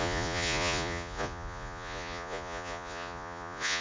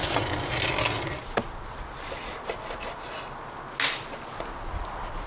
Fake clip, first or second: first